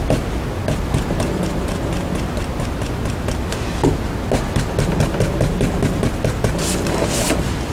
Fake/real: real